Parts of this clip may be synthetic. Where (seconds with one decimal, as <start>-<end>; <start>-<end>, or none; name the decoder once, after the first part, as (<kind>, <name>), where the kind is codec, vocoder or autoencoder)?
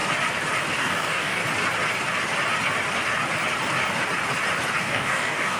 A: 0.8-1.4 (codec, DAC); 4.8-5.6